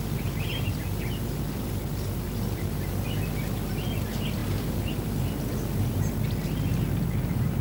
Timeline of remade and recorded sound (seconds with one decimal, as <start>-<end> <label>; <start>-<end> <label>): 0.0-7.6 recorded